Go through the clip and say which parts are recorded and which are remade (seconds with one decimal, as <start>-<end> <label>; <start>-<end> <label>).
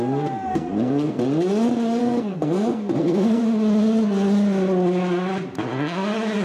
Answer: 0.0-0.5 recorded; 0.5-1.2 remade; 1.2-2.0 recorded; 2.0-3.4 remade; 3.4-6.4 recorded